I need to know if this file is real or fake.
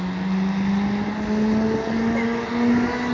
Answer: real